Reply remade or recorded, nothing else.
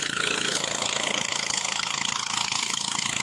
remade